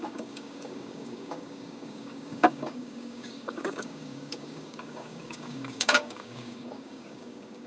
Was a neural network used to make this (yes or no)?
yes